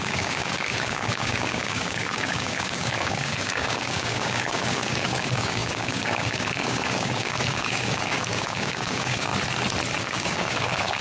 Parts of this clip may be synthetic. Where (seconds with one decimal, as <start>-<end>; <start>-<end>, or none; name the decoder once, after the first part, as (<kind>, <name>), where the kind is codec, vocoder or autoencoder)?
0.0-9.3 (codec, DAC); 10.0-11.0